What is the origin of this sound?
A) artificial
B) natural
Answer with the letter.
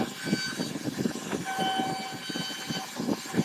B